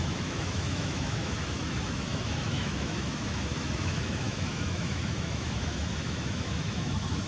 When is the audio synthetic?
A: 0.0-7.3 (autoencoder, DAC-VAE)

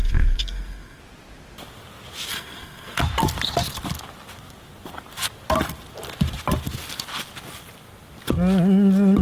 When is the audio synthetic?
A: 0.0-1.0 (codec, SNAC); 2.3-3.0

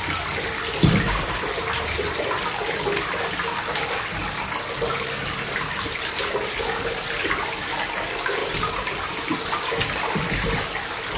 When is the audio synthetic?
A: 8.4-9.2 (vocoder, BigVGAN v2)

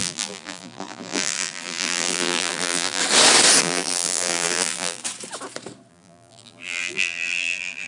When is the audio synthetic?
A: 0.0-3.0 (vocoder, BigVGAN v2); 3.6-5.0; 5.9-7.9

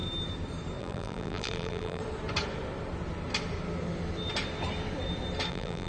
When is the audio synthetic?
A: 0.8-2.0 (vocoder, BigVGAN v2); 5.5-5.9

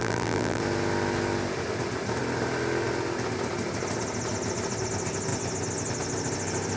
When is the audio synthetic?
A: 0.0-0.6 (vocoder, BigVGAN v2)